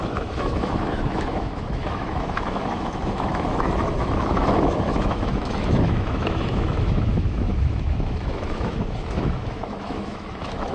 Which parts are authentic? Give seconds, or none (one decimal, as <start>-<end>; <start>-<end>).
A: none